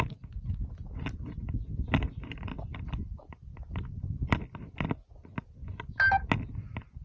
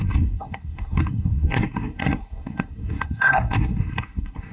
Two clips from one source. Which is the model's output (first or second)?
second